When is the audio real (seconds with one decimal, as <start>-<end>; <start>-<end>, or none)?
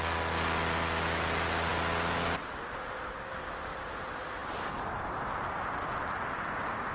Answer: 0.0-6.9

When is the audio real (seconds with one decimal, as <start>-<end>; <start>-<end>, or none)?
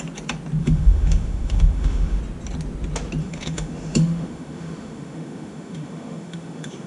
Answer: 0.0-0.6; 2.2-3.2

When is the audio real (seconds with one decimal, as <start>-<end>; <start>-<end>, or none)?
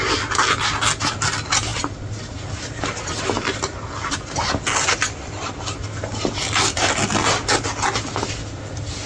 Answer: 0.0-9.1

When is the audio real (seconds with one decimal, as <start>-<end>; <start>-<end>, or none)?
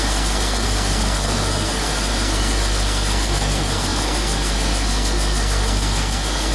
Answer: none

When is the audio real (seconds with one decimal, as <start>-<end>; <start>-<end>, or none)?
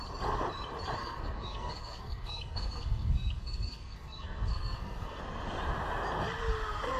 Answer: 0.0-1.0; 5.2-7.0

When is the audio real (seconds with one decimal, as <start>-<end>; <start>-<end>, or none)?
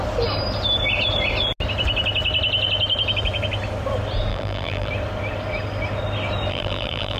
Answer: 0.0-4.3; 4.9-6.5